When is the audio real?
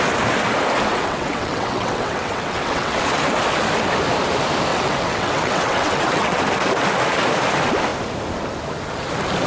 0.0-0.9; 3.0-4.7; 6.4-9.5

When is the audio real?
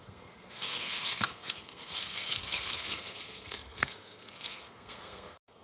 none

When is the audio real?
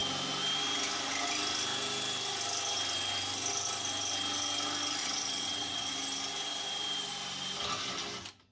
0.0-5.0; 5.9-8.5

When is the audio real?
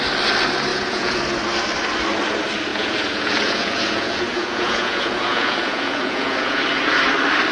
0.0-0.7; 1.2-2.7; 6.6-7.5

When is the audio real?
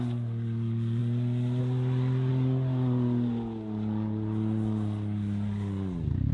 0.0-6.3